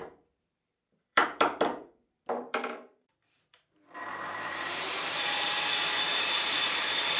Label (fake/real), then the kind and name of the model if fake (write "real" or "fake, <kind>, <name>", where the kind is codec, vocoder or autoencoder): fake, vocoder, BigVGAN v2